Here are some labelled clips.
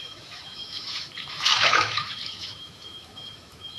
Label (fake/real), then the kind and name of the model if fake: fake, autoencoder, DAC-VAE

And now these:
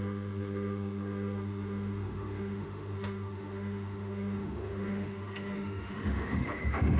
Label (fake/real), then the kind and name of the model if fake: fake, autoencoder, DAC-VAE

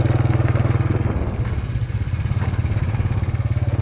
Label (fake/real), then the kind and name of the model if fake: real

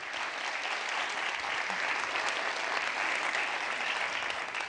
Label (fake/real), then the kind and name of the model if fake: real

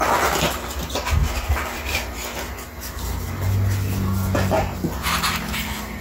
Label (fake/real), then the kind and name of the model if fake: real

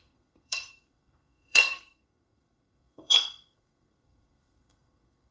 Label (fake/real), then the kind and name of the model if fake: fake, codec, SNAC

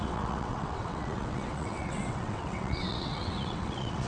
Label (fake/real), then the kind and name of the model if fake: fake, vocoder, WaveNeXt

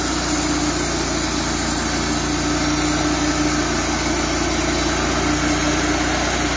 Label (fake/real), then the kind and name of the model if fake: real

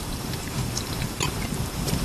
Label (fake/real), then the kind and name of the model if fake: fake, vocoder, BigVGAN v2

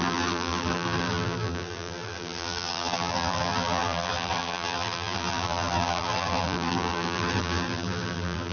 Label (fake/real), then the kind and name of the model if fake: fake, vocoder, BigVGAN v2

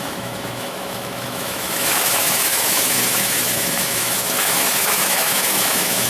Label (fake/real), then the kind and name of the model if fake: fake, autoencoder, DAC-VAE